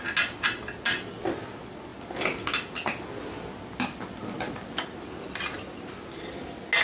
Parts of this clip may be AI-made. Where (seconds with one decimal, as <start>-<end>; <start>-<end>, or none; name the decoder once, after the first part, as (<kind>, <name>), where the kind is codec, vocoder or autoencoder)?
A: none